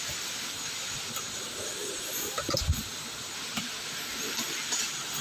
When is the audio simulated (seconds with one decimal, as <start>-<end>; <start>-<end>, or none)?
none